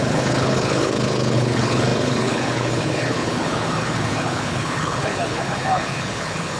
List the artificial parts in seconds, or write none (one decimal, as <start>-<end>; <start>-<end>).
0.0-6.6